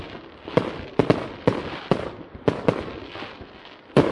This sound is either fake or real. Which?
real